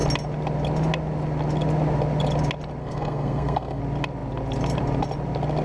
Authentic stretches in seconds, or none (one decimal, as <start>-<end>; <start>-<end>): 0.0-2.8; 3.8-5.6